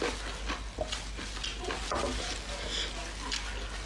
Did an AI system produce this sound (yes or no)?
no